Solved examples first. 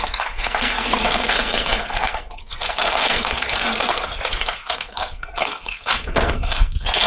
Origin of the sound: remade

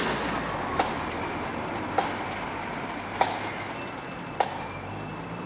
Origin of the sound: recorded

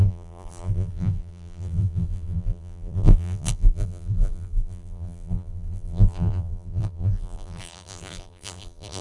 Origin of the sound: remade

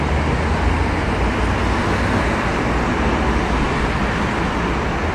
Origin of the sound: recorded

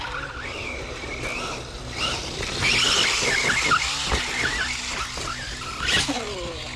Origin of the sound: recorded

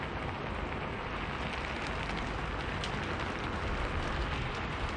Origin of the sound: recorded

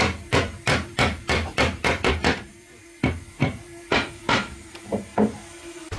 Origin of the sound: remade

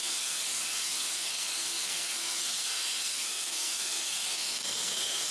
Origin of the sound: remade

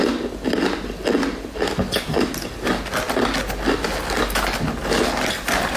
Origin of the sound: recorded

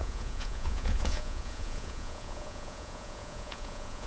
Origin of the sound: remade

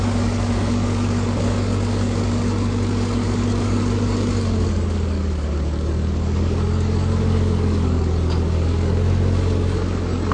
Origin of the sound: remade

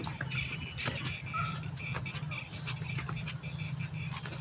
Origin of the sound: recorded